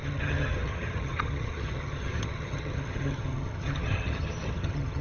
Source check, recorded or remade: remade